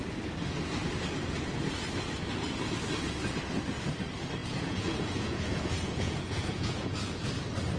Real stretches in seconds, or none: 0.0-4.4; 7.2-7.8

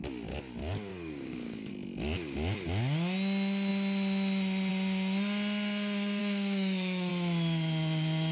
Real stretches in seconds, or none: 0.0-0.9; 1.7-6.2; 7.1-8.3

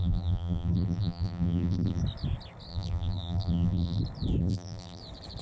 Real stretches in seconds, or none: 2.0-2.7; 4.0-4.4; 5.0-5.4

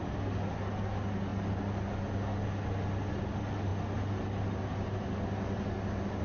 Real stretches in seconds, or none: 0.0-6.2

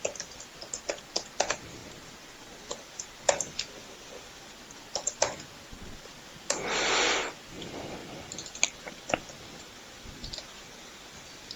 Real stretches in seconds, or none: 0.0-11.6

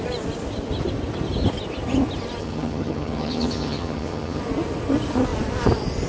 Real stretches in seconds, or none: 0.0-2.4; 4.4-6.1